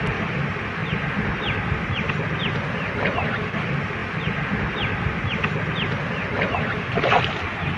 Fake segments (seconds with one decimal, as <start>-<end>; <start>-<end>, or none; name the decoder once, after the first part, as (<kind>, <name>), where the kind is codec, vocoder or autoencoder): none